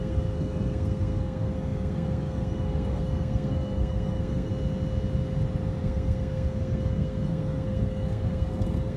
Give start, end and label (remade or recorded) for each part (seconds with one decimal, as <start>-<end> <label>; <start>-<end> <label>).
0.0-4.5 remade; 4.5-5.8 recorded; 5.8-9.0 remade